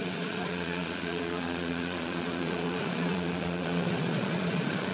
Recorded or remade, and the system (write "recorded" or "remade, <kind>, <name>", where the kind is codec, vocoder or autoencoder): remade, vocoder, Vocos